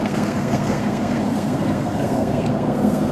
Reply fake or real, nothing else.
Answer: fake